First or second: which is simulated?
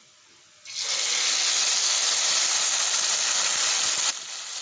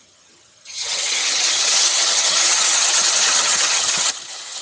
second